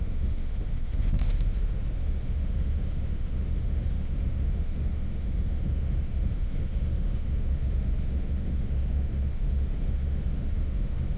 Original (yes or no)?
no